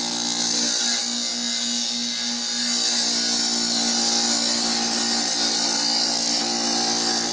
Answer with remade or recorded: recorded